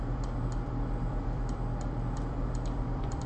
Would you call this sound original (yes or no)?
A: no